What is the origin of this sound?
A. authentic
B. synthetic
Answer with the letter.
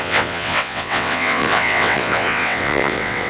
B